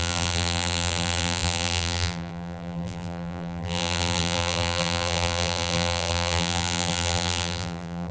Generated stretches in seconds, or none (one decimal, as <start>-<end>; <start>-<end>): 0.0-8.1